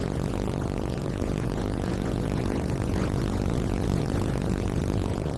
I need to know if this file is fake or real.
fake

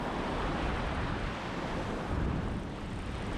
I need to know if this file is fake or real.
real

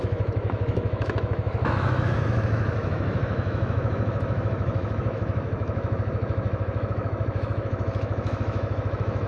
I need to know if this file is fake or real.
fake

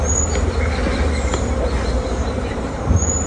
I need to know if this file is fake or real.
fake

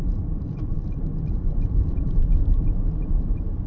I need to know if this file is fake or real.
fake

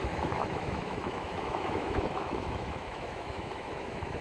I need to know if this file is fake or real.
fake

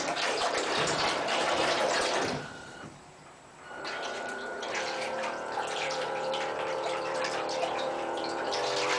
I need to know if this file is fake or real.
fake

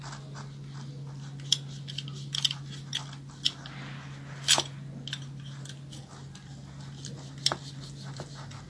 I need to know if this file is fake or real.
real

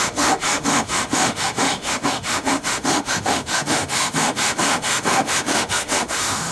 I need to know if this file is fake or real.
fake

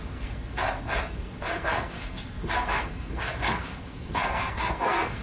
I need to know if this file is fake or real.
fake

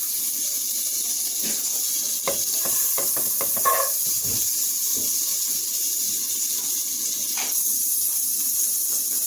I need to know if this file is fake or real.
real